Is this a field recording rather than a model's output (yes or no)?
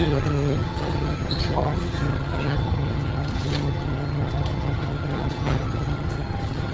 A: no